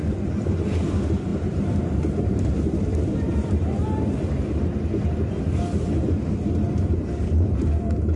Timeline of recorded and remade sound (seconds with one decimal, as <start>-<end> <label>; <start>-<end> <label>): 0.0-1.3 recorded; 1.3-4.0 remade; 4.0-8.2 recorded

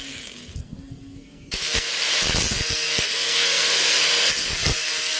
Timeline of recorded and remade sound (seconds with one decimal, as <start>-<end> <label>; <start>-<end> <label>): 0.0-1.9 remade; 1.9-2.5 recorded; 2.5-5.2 remade

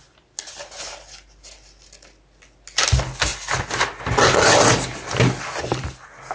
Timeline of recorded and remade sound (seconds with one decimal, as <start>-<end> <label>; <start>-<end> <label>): 0.0-4.9 recorded; 4.9-6.3 remade

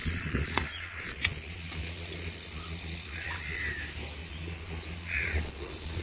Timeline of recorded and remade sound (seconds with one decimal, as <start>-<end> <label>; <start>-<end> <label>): 0.0-3.6 remade; 3.6-4.2 recorded; 4.2-6.0 remade

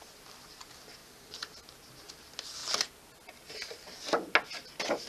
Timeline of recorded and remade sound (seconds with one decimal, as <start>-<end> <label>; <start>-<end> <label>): 0.0-5.1 recorded

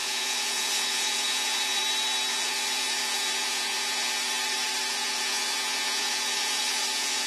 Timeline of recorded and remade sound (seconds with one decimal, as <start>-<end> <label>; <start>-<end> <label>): 0.0-1.8 remade; 1.8-2.3 recorded; 2.3-4.2 remade; 4.2-4.9 recorded; 4.9-7.3 remade

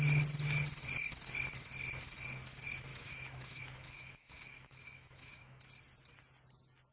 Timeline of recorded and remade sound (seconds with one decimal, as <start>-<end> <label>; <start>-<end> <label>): 0.0-2.9 recorded; 2.9-5.6 remade; 5.6-6.9 recorded